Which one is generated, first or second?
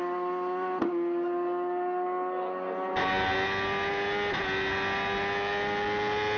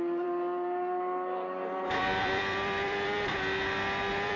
second